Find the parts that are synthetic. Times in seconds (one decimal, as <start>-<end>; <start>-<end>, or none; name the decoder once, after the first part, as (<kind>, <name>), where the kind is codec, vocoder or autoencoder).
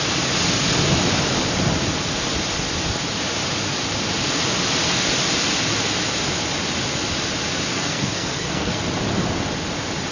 7.7-8.8 (codec, SNAC)